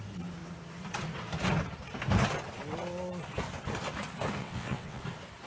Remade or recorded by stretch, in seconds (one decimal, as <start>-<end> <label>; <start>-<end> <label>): 0.0-4.4 recorded; 4.4-5.0 remade; 5.0-5.5 recorded